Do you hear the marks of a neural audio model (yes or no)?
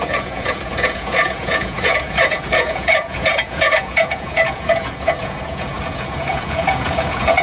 yes